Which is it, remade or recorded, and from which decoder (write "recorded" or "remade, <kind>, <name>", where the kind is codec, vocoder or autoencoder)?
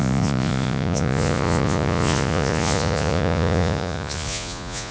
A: remade, vocoder, Vocos